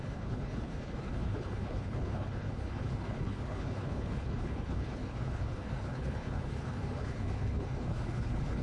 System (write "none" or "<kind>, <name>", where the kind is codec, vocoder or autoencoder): codec, HILCodec